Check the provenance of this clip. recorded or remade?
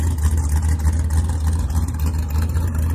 recorded